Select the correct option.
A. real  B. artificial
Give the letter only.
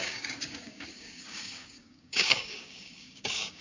B